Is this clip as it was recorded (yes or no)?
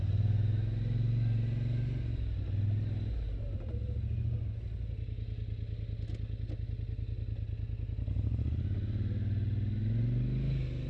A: yes